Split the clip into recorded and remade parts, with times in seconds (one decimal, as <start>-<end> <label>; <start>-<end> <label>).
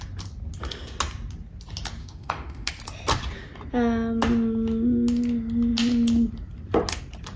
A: 0.0-2.0 recorded; 2.0-2.7 remade; 2.7-7.4 recorded